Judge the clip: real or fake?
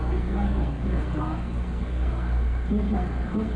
fake